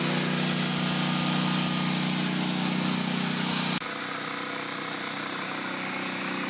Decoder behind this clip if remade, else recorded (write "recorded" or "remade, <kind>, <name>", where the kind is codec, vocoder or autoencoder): recorded